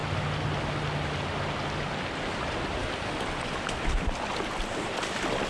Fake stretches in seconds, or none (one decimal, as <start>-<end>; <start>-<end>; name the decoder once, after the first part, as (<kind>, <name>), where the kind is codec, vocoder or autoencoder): none